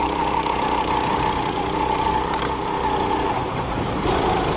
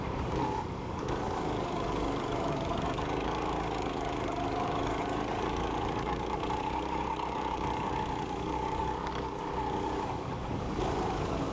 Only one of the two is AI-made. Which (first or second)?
second